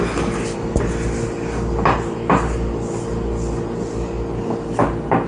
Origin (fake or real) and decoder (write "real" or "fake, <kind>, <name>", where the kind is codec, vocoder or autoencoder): real